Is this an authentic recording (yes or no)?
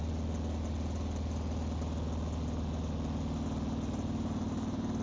yes